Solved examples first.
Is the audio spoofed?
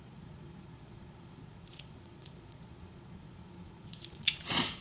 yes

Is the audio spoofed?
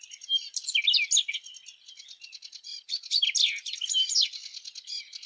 no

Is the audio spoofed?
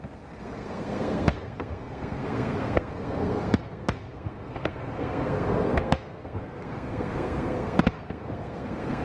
yes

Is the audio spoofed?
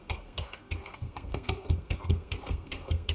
yes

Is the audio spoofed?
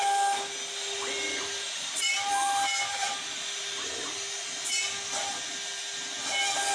no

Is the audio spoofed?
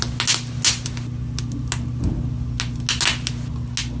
no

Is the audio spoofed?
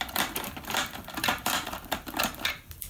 yes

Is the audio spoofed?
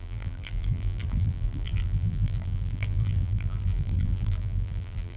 yes